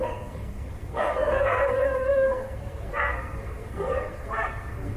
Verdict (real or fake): fake